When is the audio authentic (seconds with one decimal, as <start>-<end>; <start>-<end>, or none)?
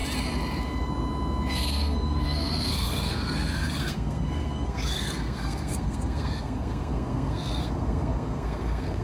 0.0-1.5